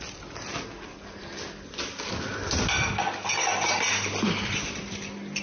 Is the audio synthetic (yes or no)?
no